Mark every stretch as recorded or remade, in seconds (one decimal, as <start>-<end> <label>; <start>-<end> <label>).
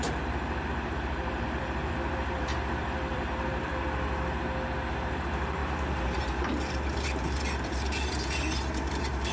0.0-3.7 remade; 3.7-4.9 recorded; 4.9-9.3 remade